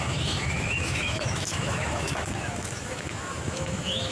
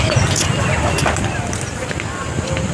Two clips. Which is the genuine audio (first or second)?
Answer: second